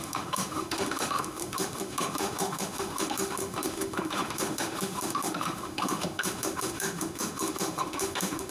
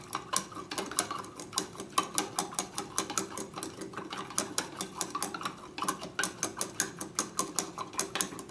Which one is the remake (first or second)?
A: first